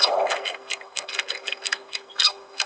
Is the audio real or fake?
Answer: fake